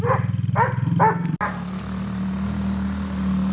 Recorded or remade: recorded